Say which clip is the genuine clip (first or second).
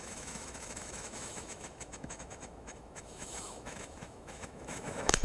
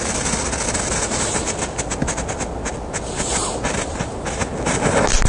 second